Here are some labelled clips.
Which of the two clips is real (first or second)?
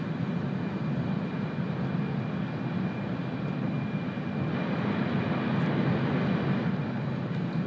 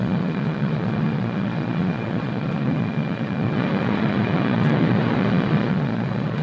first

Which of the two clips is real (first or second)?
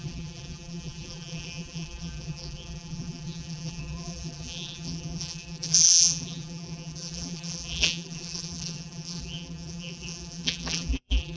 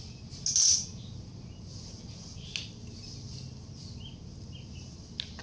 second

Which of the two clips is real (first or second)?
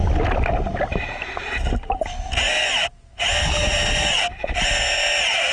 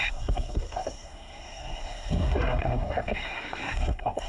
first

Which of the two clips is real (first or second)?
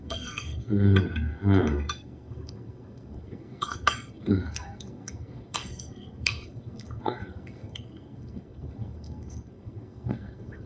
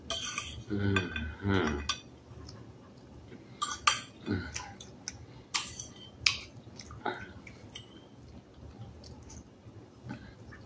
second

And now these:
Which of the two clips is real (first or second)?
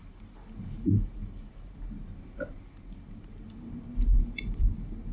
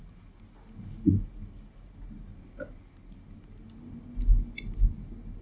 second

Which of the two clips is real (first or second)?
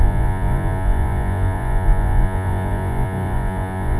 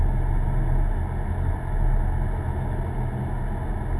second